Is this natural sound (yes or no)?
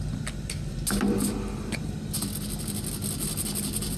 yes